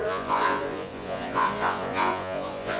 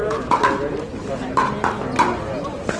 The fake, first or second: first